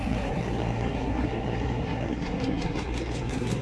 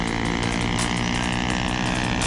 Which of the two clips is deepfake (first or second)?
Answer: first